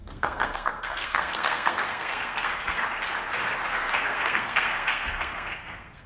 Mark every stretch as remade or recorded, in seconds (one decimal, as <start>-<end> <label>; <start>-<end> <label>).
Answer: 0.0-2.8 remade; 2.8-3.7 recorded; 3.7-6.1 remade

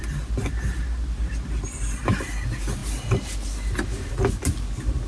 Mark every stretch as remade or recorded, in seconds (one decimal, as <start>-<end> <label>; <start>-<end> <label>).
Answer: 0.0-5.1 recorded

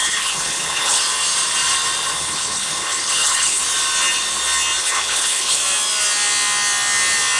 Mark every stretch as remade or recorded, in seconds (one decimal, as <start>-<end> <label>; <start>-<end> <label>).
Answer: 0.0-1.0 remade; 1.0-2.1 recorded; 2.1-3.6 remade; 3.6-4.8 recorded; 4.8-5.6 remade; 5.6-7.4 recorded

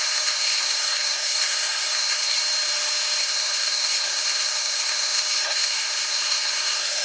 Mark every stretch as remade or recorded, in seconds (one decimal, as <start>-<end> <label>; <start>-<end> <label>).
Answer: 0.0-2.4 remade; 2.4-3.2 recorded; 3.2-7.0 remade

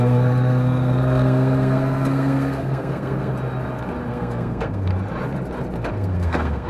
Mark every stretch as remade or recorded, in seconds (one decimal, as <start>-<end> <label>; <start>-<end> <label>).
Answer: 0.0-3.3 remade; 3.3-4.1 recorded; 4.1-4.9 remade; 4.9-5.9 recorded; 5.9-6.7 remade